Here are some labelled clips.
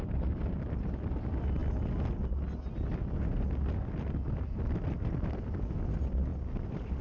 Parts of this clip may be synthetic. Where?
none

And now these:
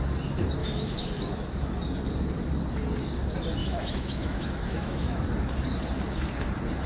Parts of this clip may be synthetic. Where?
0.6-1.1 (autoencoder, DAC-VAE); 3.6-5.2

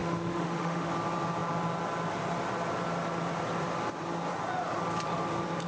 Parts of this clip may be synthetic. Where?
0.0-0.9 (autoencoder, DAC-VAE)

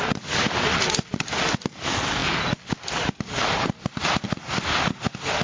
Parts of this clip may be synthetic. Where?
none